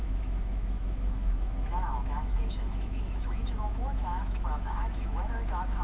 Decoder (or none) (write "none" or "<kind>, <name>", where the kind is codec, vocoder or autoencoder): autoencoder, DAC-VAE